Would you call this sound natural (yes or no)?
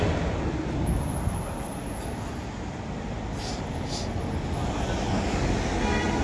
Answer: yes